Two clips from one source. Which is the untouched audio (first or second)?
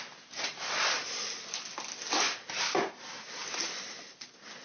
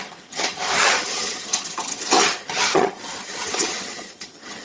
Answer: first